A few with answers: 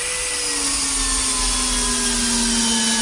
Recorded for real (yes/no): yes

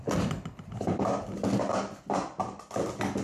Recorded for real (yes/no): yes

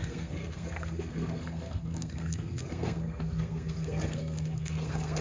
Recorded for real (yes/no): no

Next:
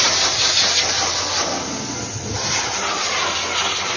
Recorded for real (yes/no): yes